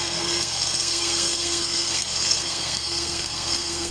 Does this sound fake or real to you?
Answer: fake